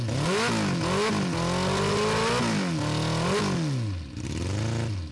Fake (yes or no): no